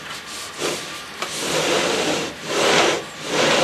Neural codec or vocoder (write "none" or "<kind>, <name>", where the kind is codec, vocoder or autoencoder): none